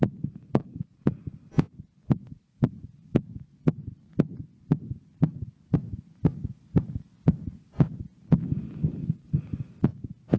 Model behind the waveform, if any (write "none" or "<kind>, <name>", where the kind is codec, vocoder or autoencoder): none